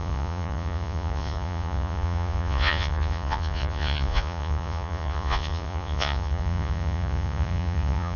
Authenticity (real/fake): fake